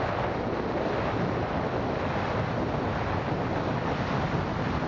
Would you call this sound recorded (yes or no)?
yes